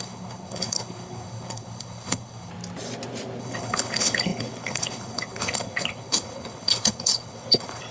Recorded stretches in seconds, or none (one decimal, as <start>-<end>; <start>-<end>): 2.5-3.4